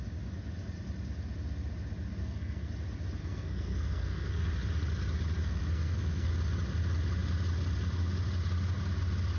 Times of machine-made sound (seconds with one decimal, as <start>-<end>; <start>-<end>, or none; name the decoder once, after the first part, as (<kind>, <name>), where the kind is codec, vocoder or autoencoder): 2.2-2.7 (codec, SNAC); 3.2-4.5; 5.4-6.3

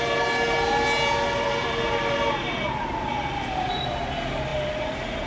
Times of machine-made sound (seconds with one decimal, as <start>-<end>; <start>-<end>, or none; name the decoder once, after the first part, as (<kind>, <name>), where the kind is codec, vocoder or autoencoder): none

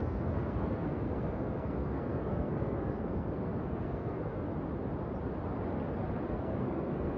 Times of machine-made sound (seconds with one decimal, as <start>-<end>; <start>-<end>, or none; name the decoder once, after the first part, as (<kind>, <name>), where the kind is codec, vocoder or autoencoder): 0.0-4.5 (codec, SNAC); 6.3-7.2

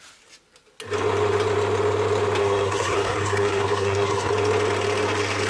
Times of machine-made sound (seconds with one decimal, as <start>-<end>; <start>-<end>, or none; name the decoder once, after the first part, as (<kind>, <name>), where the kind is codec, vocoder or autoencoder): 2.4-4.3 (codec, SNAC)

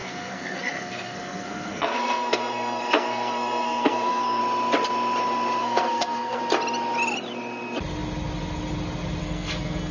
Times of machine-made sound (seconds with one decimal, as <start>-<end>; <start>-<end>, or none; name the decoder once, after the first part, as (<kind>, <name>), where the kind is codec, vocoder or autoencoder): 0.0-4.4 (codec, SNAC); 5.6-6.4; 9.2-9.9

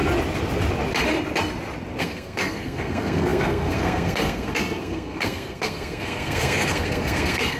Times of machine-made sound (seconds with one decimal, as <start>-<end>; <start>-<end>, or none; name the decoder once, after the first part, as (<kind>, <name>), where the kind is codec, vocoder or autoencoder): 2.0-7.6 (codec, SNAC)

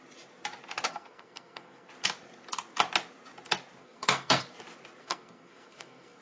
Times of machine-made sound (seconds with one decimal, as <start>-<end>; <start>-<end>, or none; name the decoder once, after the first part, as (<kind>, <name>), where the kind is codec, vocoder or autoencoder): 0.9-1.9 (codec, SNAC); 3.8-4.4; 5.0-6.2